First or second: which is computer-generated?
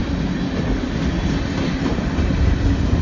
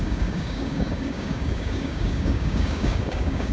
second